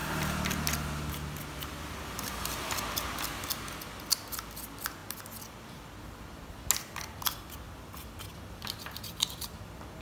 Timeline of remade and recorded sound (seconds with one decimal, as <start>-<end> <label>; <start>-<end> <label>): 0.0-10.0 recorded